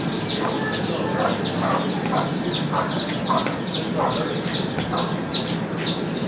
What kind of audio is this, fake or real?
real